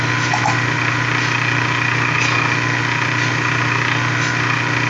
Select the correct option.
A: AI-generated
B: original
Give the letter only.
B